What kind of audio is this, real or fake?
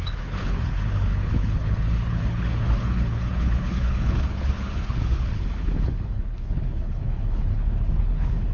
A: fake